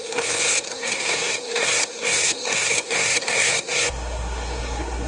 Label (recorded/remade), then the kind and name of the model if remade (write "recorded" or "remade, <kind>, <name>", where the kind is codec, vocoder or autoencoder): remade, codec, SNAC